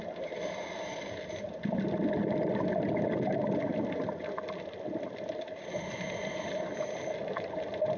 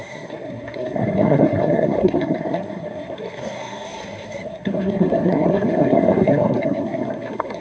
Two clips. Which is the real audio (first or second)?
first